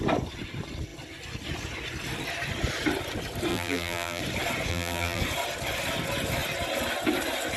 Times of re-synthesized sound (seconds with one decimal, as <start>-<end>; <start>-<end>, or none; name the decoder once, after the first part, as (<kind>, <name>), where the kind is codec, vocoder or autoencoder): 3.5-4.2 (vocoder, BigVGAN v2); 4.7-5.2